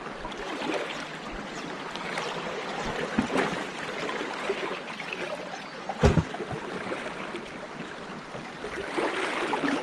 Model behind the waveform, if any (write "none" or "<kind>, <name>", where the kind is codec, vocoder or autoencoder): none